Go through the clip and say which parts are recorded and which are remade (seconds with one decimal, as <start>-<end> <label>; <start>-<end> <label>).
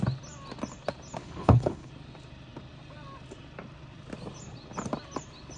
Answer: 0.0-1.2 recorded; 1.2-1.9 remade; 1.9-5.6 recorded